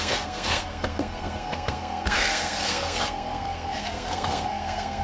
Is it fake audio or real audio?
fake